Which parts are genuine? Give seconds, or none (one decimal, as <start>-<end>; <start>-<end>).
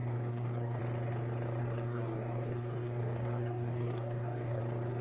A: 0.8-1.6; 4.6-5.0